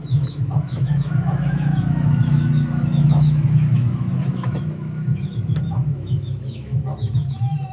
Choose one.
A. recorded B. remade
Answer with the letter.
B